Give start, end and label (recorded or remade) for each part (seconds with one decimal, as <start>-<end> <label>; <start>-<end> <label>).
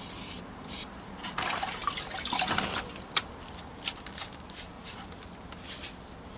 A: 0.0-6.4 recorded